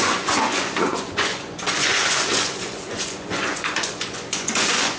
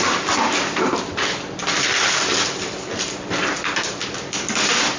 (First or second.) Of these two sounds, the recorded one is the second